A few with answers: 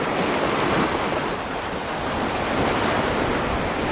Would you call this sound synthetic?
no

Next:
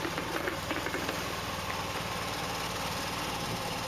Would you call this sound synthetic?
no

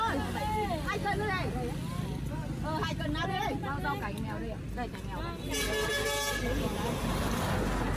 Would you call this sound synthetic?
no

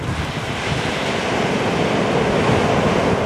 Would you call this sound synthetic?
no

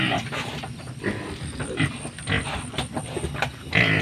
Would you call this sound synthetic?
no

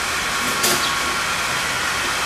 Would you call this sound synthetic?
no